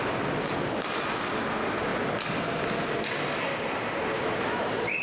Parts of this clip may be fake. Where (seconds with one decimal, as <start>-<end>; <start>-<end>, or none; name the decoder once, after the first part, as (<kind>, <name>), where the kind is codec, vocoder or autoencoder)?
none